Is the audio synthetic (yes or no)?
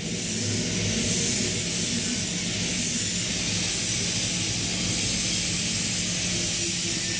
no